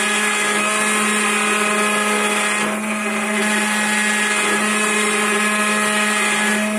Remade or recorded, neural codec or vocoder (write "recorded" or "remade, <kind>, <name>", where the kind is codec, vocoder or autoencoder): recorded